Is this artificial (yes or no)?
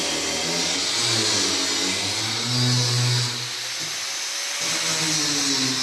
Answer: no